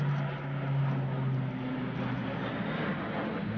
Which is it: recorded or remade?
recorded